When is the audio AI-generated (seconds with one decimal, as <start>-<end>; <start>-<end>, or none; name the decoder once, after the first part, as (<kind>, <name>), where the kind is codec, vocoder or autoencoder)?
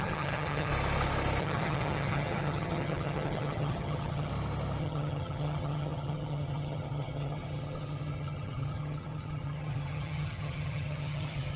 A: 0.0-0.7 (vocoder, HiFi-GAN); 1.4-4.3; 4.8-11.6